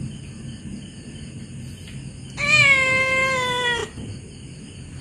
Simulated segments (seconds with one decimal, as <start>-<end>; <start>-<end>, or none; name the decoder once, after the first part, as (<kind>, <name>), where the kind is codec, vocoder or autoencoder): none